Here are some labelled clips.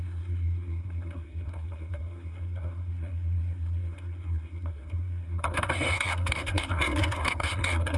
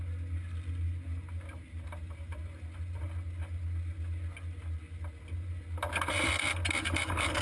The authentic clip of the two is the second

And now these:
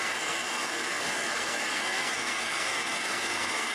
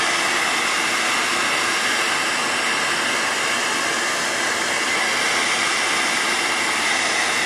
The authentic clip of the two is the second